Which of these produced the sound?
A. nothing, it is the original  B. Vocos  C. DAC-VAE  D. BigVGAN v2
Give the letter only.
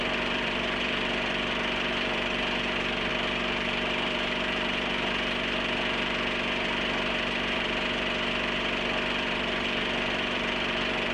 D